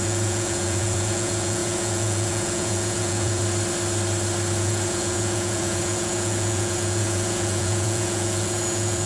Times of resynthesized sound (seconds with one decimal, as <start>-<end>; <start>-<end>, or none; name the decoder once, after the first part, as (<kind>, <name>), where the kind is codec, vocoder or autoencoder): 0.0-3.4 (vocoder, Vocos); 4.6-9.1